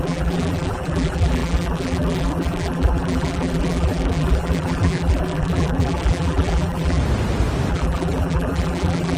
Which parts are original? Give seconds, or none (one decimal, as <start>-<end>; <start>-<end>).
7.0-7.7